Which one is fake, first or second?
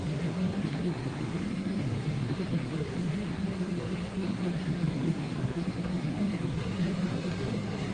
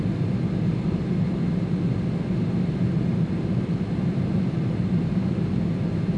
first